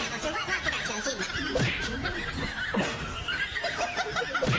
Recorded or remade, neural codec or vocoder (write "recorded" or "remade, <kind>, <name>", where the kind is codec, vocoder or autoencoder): recorded